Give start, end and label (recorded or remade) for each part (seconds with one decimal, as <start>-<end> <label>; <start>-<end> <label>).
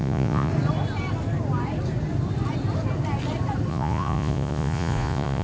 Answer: 0.0-0.5 remade; 0.5-3.7 recorded; 3.7-5.4 remade